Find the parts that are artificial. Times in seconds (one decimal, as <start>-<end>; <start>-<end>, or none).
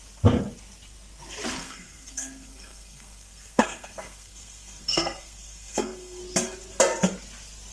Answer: 1.6-6.2